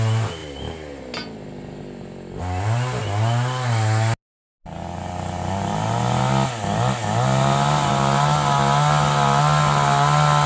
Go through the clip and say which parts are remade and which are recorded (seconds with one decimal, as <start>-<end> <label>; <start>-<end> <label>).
0.0-10.5 recorded